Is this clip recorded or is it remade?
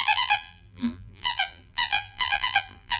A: remade